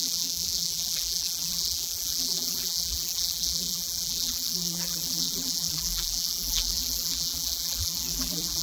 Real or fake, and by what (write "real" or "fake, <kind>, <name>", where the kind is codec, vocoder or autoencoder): fake, vocoder, BigVGAN v2